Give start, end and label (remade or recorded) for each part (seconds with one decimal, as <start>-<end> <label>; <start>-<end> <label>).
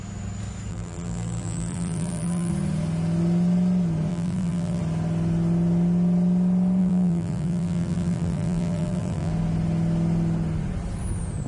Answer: 0.0-0.7 recorded; 0.7-2.5 remade; 2.5-4.1 recorded; 4.1-4.8 remade; 4.8-6.8 recorded; 6.8-9.3 remade; 9.3-11.5 recorded